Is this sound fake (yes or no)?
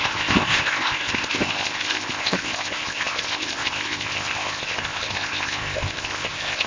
yes